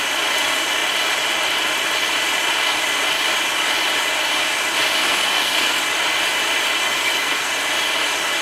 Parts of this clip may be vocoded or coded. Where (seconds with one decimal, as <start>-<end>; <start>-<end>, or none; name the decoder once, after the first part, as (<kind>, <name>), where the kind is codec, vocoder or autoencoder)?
5.0-5.8 (codec, SNAC); 6.8-7.5